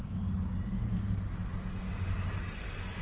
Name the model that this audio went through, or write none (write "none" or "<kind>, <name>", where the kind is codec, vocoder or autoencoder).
none